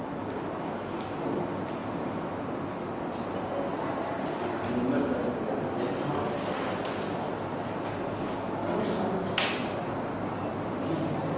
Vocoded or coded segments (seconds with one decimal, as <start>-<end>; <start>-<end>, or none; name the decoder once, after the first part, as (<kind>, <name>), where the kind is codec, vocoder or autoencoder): 1.8-2.3 (vocoder, BigVGAN v2); 3.7-4.7